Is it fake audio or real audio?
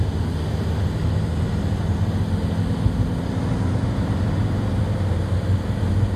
real